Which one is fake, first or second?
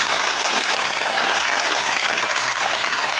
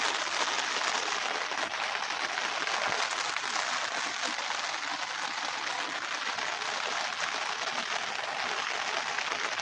first